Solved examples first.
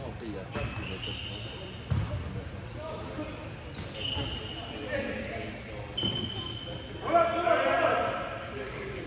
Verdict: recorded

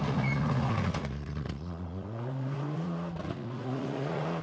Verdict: remade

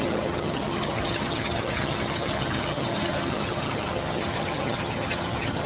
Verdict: remade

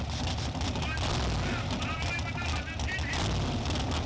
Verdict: recorded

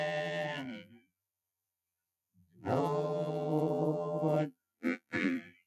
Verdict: remade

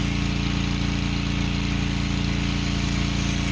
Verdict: recorded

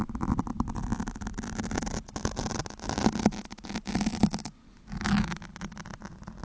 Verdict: recorded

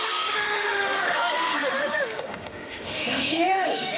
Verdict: remade